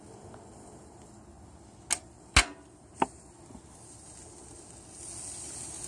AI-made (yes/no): no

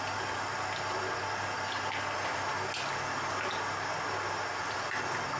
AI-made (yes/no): no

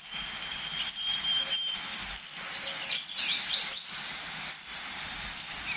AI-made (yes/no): no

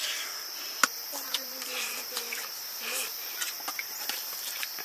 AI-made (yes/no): yes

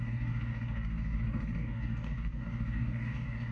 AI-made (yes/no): yes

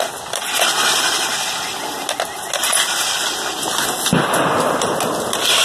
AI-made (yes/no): no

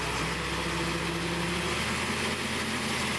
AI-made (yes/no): no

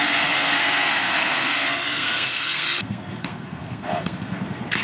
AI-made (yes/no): yes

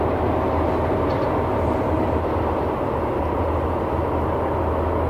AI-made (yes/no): no